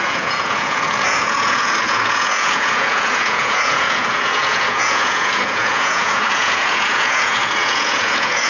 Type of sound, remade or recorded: remade